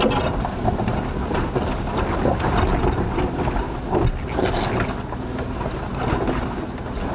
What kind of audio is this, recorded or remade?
recorded